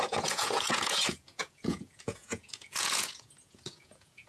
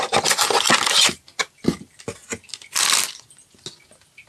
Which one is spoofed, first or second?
first